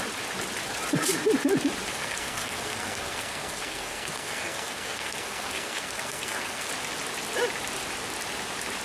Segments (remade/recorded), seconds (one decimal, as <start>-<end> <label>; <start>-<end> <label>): 0.0-1.9 recorded; 1.9-6.7 remade; 6.7-8.8 recorded